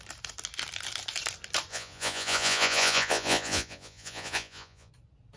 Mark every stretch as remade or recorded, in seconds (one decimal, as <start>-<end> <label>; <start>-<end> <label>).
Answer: 0.0-1.7 recorded; 1.7-4.9 remade; 4.9-5.4 recorded